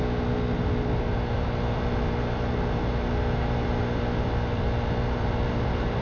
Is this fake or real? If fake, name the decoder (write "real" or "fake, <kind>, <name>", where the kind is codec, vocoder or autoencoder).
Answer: real